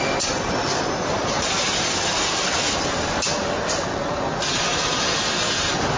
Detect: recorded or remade recorded